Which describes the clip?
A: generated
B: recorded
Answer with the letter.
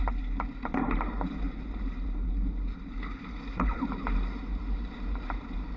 A